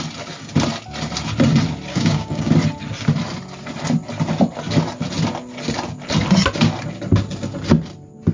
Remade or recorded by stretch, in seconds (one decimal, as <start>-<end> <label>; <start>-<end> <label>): 0.0-1.9 recorded; 1.9-2.5 remade; 2.5-8.3 recorded